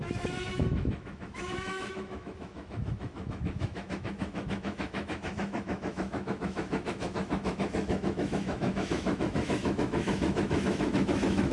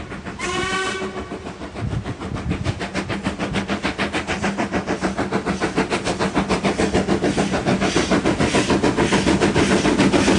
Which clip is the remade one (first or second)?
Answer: first